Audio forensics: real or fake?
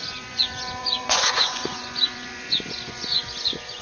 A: fake